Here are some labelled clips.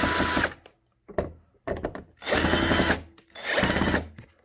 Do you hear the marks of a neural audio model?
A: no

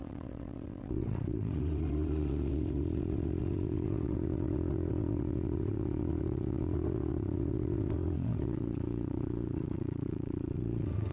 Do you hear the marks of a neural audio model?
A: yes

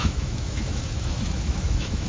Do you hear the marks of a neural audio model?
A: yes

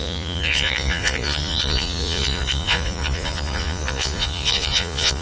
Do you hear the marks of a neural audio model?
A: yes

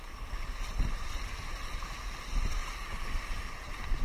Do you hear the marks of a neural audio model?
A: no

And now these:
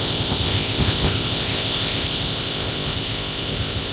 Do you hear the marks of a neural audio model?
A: yes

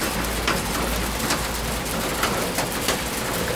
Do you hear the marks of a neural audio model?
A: no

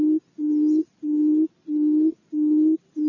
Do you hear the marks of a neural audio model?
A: no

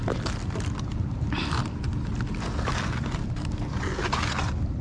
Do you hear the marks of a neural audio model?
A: no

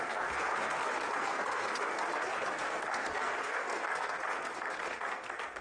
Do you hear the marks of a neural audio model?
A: yes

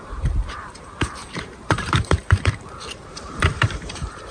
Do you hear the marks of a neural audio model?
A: yes